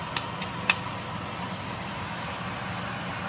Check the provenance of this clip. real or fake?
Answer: real